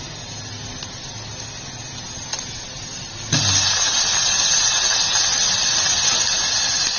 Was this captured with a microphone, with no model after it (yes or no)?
yes